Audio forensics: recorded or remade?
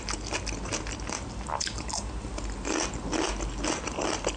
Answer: recorded